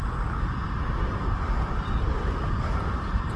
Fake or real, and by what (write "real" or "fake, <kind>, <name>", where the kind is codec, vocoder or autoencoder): real